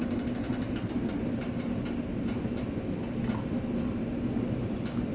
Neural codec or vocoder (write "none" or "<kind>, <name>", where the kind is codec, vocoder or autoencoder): none